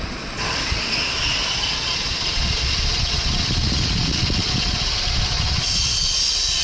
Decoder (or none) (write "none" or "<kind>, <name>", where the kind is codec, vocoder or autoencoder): vocoder, Vocos